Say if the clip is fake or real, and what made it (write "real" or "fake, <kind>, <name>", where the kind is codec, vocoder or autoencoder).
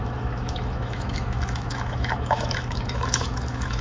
fake, autoencoder, DAC-VAE